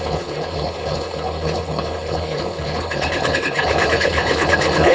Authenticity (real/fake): fake